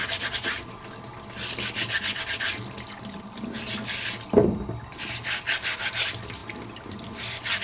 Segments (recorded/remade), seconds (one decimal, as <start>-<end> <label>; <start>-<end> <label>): 0.0-7.6 recorded